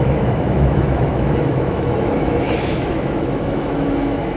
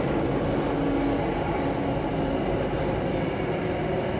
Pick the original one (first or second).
second